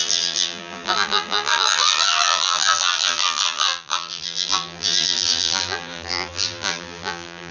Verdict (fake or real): fake